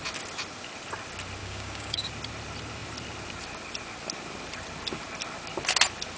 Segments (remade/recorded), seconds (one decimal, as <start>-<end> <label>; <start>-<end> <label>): 0.0-1.4 recorded; 1.4-2.1 remade; 2.1-6.2 recorded